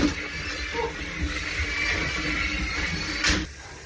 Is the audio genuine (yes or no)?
yes